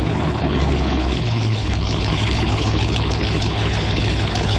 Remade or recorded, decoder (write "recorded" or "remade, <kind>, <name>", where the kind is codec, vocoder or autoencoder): remade, codec, HILCodec